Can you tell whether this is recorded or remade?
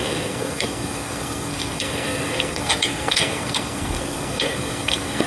remade